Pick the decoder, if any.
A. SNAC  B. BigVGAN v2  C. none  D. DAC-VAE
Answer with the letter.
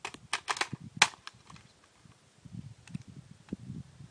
C